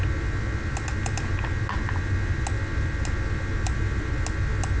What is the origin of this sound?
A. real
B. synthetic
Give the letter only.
A